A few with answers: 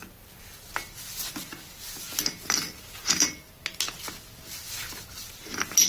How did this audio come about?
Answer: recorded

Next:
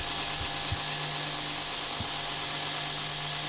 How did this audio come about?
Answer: recorded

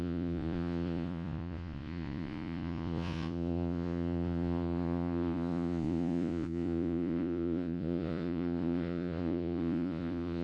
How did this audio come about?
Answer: remade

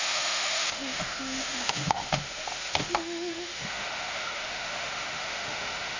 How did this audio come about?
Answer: remade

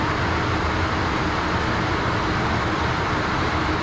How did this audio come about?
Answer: recorded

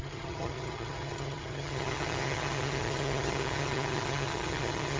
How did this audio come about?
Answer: remade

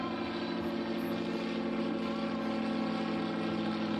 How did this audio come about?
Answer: recorded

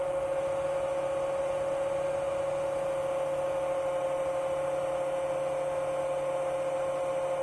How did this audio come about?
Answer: recorded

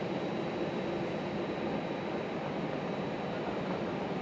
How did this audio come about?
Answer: remade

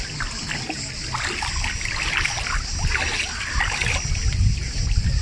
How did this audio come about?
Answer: recorded